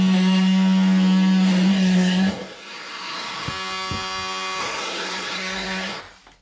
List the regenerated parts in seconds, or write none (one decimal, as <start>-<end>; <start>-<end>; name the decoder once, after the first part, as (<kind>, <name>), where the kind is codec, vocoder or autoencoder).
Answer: 1.7-3.5 (codec, SNAC); 4.6-6.0